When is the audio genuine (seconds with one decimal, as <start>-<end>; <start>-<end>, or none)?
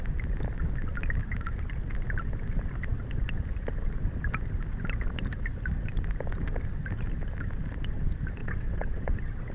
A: 0.0-8.4; 9.1-9.5